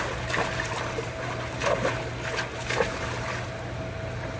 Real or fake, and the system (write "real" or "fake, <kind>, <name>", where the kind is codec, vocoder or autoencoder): real